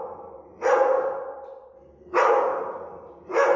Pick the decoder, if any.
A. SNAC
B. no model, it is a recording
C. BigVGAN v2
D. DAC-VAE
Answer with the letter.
B